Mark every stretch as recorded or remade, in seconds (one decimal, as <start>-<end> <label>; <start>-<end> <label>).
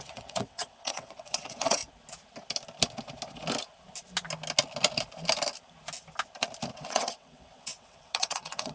0.0-1.8 remade; 1.8-6.7 recorded; 6.7-8.7 remade